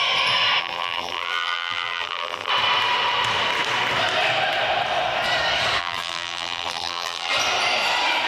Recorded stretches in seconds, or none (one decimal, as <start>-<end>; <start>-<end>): 0.0-0.6; 2.5-5.8; 7.3-8.3